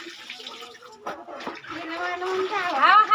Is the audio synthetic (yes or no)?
no